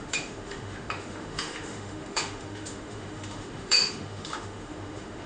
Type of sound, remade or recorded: remade